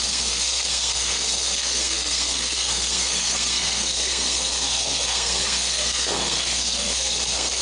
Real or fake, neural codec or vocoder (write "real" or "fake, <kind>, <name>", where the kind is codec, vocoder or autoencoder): fake, codec, SNAC